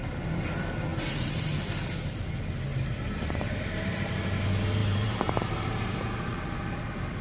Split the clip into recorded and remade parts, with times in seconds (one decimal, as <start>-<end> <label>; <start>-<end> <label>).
0.0-0.9 recorded; 0.9-1.4 remade; 1.4-2.7 recorded; 2.7-4.1 remade; 4.1-4.8 recorded; 4.8-6.0 remade; 6.0-7.2 recorded